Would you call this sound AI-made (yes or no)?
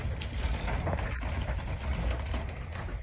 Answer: no